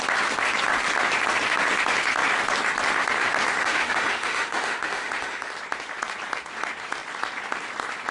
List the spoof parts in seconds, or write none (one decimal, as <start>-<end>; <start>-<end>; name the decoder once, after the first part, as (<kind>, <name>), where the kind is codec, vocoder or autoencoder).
3.6-5.5 (autoencoder, DAC-VAE)